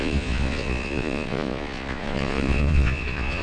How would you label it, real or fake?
fake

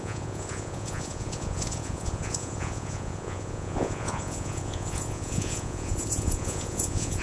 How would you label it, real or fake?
fake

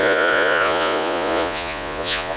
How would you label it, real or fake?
fake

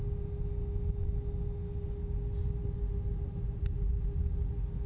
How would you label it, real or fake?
real